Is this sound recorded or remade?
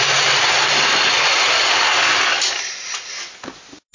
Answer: recorded